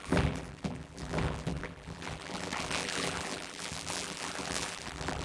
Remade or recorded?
remade